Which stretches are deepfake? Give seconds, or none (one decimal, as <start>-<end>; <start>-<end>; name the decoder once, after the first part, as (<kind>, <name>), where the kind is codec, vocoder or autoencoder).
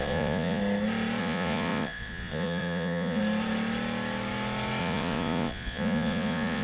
0.0-0.6 (vocoder, Vocos); 1.2-3.2; 4.8-6.6